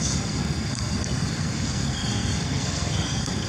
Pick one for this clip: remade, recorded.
remade